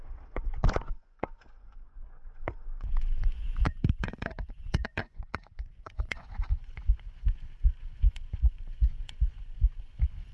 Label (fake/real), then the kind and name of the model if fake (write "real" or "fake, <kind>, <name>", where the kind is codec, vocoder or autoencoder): fake, vocoder, Vocos